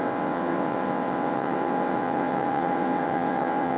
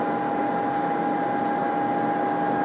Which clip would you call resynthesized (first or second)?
first